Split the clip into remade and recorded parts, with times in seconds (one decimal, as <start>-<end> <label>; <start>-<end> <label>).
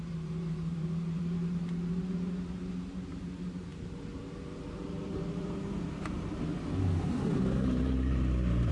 0.0-8.7 remade